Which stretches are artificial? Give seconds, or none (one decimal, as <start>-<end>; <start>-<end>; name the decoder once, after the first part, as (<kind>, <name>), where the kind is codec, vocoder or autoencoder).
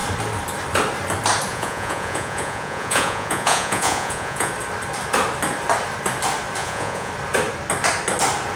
1.5-4.5 (vocoder, Vocos); 6.6-7.1